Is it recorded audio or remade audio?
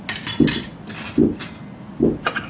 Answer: recorded